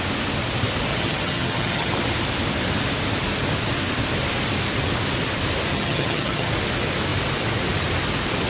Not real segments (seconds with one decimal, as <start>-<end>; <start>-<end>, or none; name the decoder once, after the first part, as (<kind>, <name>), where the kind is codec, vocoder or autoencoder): 0.9-1.9 (vocoder, HiFi-GAN); 5.7-6.5